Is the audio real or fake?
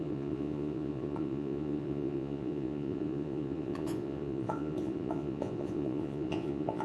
fake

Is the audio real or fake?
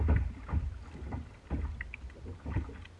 real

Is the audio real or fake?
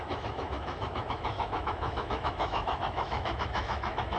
fake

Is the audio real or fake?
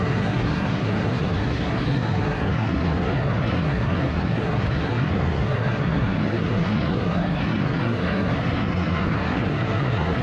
fake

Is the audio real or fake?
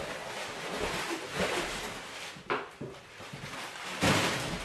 real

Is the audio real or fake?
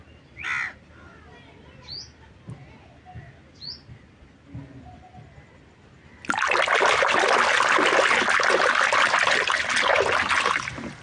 real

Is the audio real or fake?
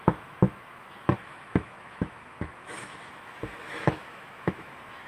fake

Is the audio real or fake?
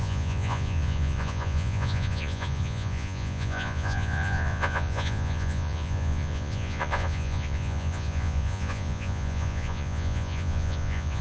fake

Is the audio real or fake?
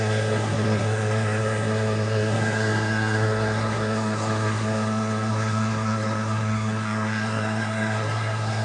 fake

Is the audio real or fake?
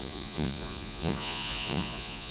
fake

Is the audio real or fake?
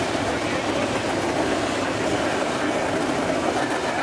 real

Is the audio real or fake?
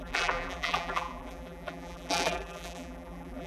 fake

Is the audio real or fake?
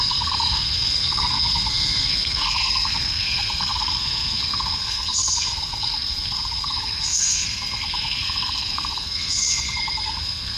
fake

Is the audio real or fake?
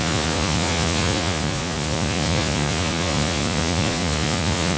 fake